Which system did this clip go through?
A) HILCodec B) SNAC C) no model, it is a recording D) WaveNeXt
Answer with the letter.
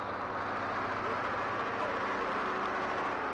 C